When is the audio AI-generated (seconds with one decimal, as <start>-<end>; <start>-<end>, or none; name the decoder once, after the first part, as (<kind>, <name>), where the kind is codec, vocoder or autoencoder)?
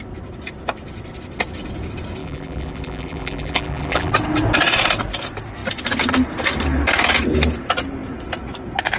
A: 2.2-4.1 (vocoder, BigVGAN v2)